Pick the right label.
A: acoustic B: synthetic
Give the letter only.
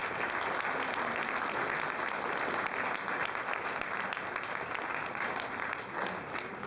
A